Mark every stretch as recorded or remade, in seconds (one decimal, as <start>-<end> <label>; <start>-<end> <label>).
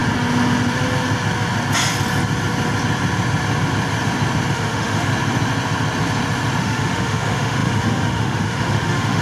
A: 0.0-4.5 recorded; 4.5-5.1 remade; 5.1-6.6 recorded; 6.6-9.2 remade